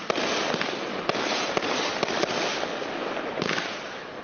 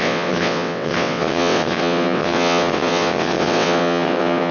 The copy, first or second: second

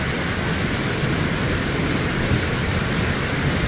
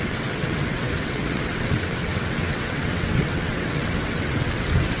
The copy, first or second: second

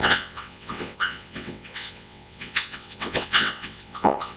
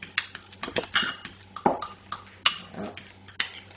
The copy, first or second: first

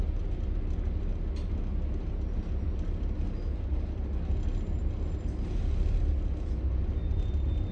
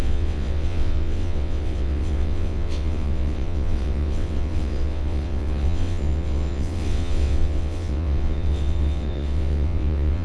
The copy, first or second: second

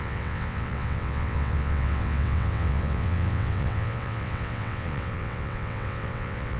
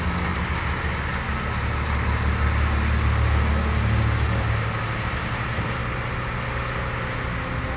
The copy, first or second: first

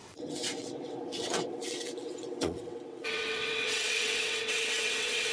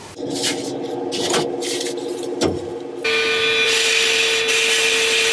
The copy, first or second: first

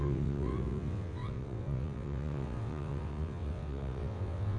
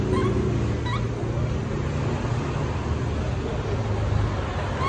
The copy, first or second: first